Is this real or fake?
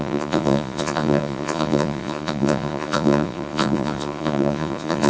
fake